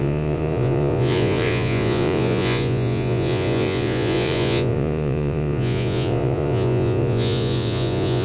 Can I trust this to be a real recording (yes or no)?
no